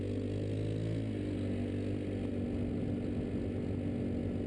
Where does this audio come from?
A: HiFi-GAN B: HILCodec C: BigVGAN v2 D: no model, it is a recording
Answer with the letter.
D